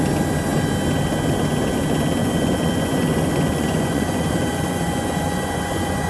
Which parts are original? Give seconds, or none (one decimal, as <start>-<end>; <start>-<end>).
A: 0.0-2.2